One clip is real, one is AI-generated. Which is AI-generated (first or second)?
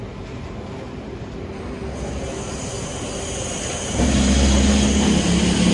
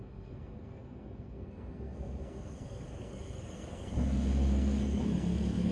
second